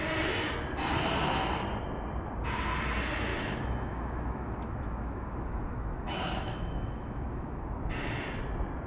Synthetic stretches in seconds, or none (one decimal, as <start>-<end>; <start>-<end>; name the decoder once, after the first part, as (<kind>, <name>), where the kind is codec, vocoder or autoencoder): 3.3-7.6 (autoencoder, DAC-VAE)